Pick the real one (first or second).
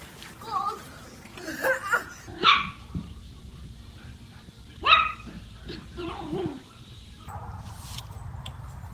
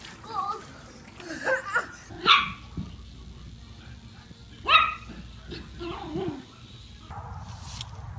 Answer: second